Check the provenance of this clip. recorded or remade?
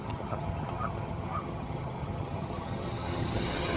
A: remade